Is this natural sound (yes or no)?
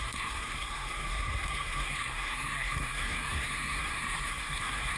no